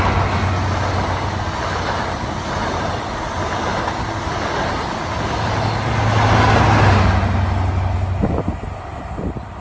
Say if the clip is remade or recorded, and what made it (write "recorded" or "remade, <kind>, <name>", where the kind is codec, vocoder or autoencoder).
recorded